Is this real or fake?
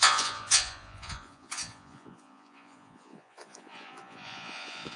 fake